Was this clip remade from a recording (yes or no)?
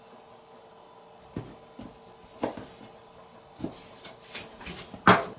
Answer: no